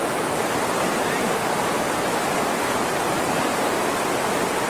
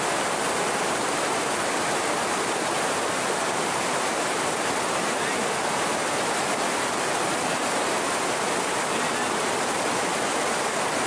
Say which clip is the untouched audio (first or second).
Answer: first